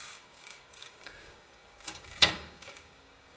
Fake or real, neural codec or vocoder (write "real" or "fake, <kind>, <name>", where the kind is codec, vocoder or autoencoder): fake, codec, DAC